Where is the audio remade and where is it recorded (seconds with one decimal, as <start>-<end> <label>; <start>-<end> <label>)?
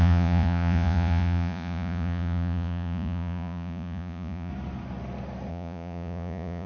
0.0-4.5 remade; 4.5-5.5 recorded; 5.5-6.7 remade